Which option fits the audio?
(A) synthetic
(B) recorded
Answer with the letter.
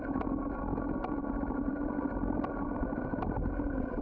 B